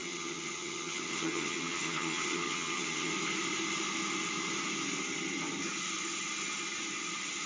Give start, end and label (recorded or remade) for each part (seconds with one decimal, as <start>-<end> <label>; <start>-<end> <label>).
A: 0.0-3.1 remade; 3.1-7.5 recorded

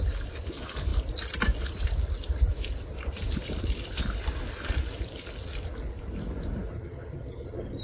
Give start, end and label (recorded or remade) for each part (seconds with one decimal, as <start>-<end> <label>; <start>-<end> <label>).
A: 0.0-6.7 recorded; 6.7-7.8 remade

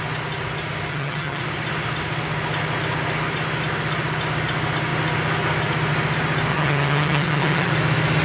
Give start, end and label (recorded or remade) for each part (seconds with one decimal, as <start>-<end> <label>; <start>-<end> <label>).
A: 0.0-0.9 recorded; 0.9-1.4 remade; 1.4-6.5 recorded; 6.5-7.7 remade; 7.7-8.2 recorded

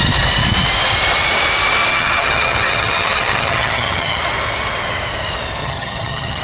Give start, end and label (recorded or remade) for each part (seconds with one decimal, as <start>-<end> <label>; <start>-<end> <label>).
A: 0.0-1.9 recorded; 1.9-4.2 remade; 4.2-5.6 recorded; 5.6-6.4 remade

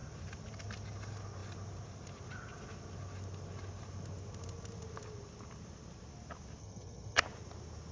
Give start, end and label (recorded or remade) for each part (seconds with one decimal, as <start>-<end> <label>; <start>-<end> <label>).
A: 0.0-6.6 recorded; 6.6-7.2 remade; 7.2-7.9 recorded

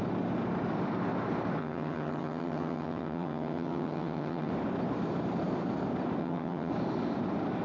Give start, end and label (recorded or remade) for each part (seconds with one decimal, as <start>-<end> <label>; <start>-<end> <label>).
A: 0.0-1.6 recorded; 1.6-4.5 remade; 4.5-6.2 recorded; 6.2-6.7 remade; 6.7-7.6 recorded

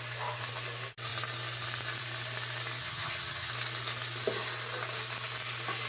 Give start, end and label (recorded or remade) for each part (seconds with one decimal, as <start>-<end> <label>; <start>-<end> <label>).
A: 0.0-2.8 recorded; 2.8-3.5 remade; 3.5-5.9 recorded

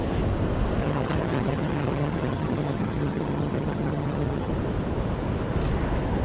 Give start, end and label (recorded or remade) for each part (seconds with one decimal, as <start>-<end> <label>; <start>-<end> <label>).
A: 0.0-0.8 recorded; 0.8-4.5 remade; 4.5-6.2 recorded